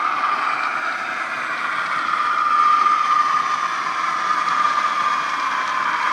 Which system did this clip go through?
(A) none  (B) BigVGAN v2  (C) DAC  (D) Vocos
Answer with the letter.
B